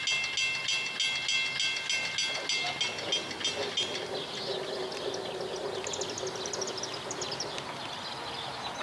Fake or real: real